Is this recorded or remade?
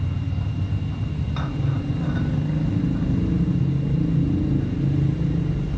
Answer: recorded